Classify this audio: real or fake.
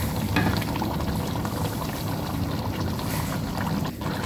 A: real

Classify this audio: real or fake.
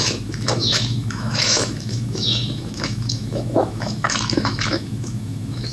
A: fake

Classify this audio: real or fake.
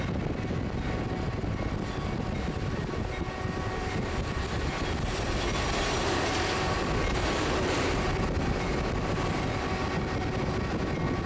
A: real